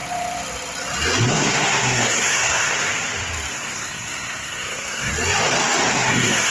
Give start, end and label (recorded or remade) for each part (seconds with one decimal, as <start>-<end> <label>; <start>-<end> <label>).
0.0-1.3 recorded; 1.3-2.9 remade; 2.9-3.5 recorded; 3.5-5.1 remade; 5.1-5.9 recorded; 5.9-6.5 remade

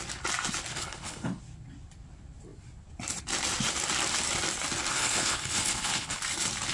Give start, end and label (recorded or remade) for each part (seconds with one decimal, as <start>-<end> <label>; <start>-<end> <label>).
0.0-0.7 recorded; 0.7-1.4 remade; 1.4-4.9 recorded; 4.9-6.2 remade; 6.2-6.7 recorded